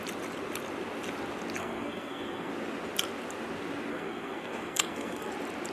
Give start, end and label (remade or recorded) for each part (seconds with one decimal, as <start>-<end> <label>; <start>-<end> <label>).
0.0-1.6 recorded; 1.6-2.5 remade; 2.5-3.9 recorded; 3.9-5.3 remade; 5.3-5.7 recorded